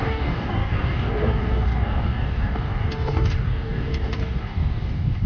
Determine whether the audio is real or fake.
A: fake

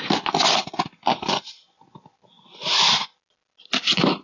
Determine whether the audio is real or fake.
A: real